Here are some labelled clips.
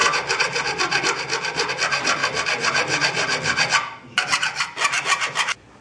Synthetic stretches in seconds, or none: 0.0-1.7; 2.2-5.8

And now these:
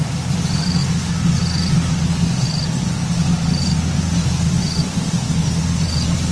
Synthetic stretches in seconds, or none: 0.0-0.8; 4.6-6.3

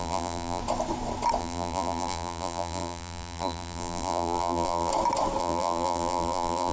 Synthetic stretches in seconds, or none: 0.0-0.6; 1.4-4.9; 5.4-6.7

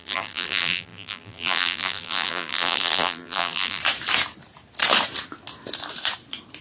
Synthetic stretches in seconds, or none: 0.0-3.8

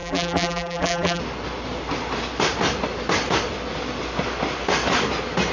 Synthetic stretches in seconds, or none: 0.0-1.2

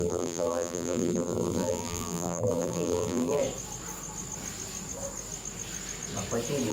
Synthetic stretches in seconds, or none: 0.0-3.4